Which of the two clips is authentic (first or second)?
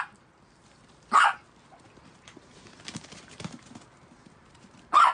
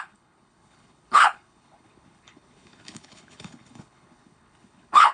first